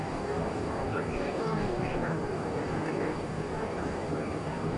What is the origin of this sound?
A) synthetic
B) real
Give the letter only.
A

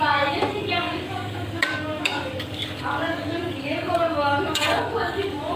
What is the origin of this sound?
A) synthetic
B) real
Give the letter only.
A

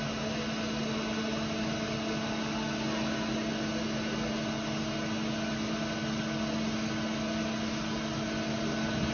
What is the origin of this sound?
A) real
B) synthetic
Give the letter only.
A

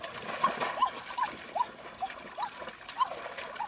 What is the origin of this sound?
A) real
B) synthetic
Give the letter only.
A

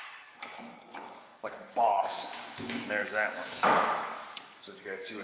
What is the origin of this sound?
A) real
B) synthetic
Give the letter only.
B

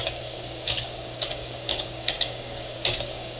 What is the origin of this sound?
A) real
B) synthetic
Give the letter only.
B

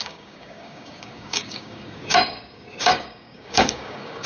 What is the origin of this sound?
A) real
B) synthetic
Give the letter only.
B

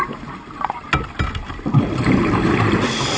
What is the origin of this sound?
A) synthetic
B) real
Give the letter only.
B